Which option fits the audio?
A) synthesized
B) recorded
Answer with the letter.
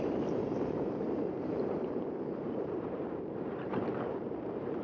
A